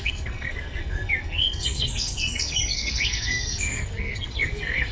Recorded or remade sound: remade